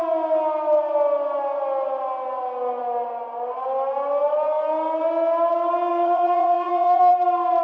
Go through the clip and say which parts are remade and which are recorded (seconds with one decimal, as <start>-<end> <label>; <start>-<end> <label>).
0.0-5.9 recorded; 5.9-7.1 remade; 7.1-7.6 recorded

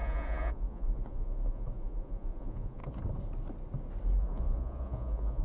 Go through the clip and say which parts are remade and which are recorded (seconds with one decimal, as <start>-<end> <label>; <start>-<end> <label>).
0.0-2.8 remade; 2.8-4.2 recorded; 4.2-5.4 remade

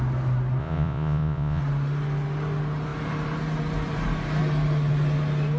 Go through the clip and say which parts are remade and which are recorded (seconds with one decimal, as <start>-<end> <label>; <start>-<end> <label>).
0.0-0.6 recorded; 0.6-1.6 remade; 1.6-5.6 recorded

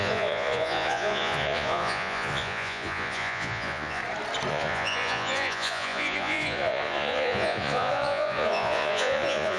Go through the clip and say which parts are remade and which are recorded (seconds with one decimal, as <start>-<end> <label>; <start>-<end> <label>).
0.0-4.0 remade; 4.0-4.5 recorded; 4.5-9.6 remade